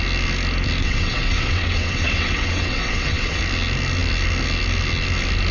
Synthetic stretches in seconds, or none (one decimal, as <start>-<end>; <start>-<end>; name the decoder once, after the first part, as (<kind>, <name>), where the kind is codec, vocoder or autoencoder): 0.8-3.4 (vocoder, WaveNeXt)